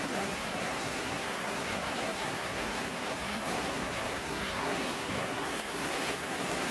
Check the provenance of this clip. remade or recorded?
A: remade